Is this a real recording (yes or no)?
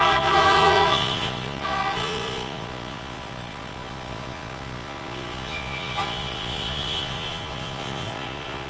no